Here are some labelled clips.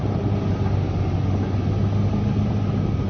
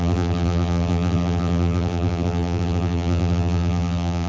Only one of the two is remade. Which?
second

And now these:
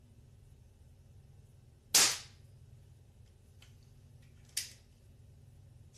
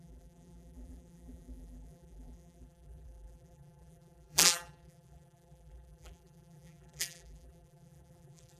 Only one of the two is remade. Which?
second